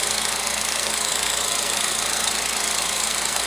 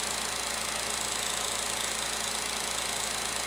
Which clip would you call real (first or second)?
second